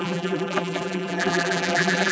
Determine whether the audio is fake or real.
fake